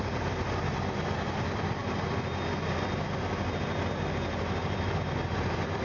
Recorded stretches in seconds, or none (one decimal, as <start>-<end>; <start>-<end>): 1.8-5.3